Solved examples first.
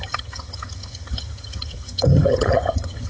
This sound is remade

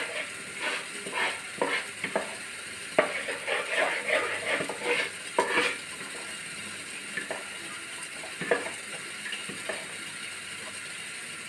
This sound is recorded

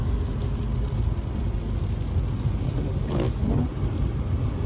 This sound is recorded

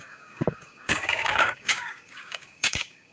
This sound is remade